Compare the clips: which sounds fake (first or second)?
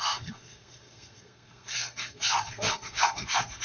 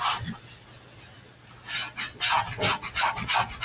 first